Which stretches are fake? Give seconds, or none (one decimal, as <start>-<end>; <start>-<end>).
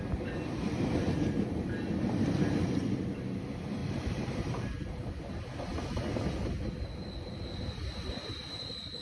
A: 3.8-5.0